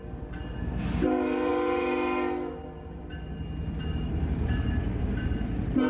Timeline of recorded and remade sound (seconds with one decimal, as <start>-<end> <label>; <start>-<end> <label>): 0.0-5.9 recorded